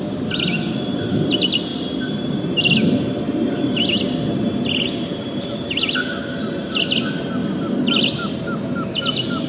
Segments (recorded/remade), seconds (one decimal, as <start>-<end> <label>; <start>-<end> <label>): 0.0-7.4 recorded; 7.4-8.9 remade; 8.9-9.5 recorded